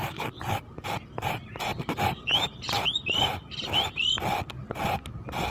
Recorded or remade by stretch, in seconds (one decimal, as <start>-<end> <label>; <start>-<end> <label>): 0.0-5.5 recorded